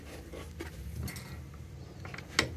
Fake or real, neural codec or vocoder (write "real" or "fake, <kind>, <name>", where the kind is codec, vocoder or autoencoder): real